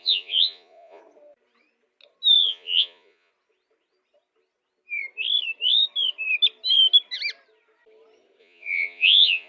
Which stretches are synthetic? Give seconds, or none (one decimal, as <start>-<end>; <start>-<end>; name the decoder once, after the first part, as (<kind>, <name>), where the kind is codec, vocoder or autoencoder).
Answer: 0.0-1.0 (vocoder, Vocos); 2.5-3.3; 8.4-9.5